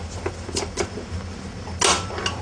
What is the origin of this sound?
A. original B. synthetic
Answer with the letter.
A